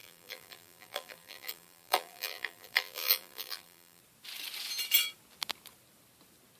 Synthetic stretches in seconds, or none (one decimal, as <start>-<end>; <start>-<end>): 0.0-4.0